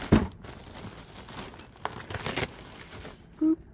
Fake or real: real